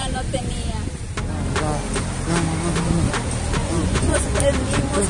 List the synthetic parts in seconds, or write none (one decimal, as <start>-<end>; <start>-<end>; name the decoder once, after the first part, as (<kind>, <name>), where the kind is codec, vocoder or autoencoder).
3.6-4.4 (vocoder, Vocos)